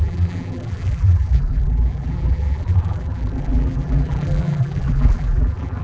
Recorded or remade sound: remade